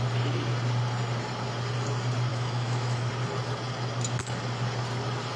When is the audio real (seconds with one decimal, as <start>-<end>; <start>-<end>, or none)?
0.0-2.3; 3.1-5.4